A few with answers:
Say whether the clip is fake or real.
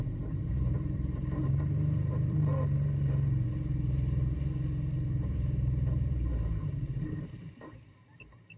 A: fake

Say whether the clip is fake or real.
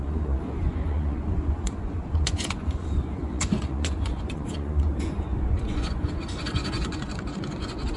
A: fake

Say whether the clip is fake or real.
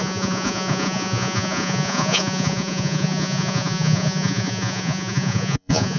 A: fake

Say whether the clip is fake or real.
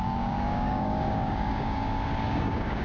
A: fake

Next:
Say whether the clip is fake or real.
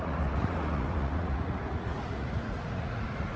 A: fake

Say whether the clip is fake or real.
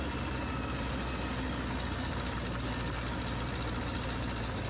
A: real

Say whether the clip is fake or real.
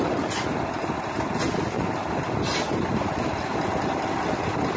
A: real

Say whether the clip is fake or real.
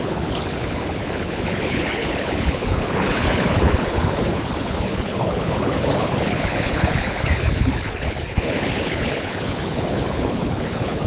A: fake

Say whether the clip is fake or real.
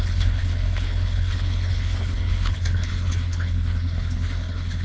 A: fake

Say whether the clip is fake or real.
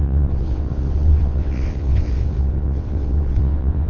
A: fake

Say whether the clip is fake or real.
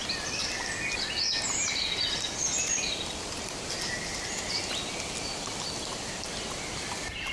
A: real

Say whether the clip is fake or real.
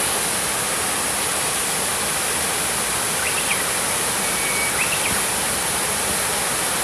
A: real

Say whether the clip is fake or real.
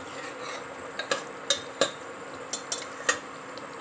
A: real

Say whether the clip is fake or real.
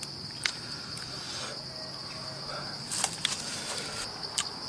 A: real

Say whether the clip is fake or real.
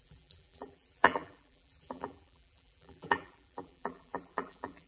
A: fake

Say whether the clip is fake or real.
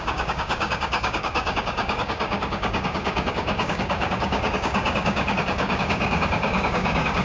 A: fake